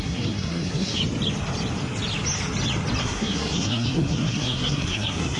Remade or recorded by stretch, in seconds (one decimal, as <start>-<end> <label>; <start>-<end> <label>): 0.0-1.0 remade; 1.0-3.0 recorded; 3.0-5.4 remade